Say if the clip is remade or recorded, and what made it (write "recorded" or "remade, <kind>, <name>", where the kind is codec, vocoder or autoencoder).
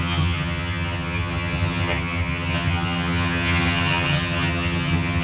remade, vocoder, HiFi-GAN